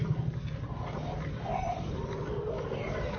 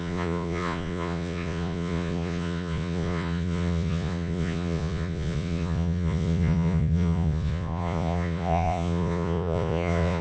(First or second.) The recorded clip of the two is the first